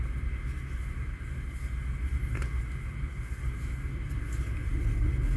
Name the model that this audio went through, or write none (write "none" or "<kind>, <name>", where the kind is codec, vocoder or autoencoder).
none